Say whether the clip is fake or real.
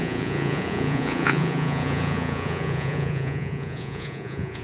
fake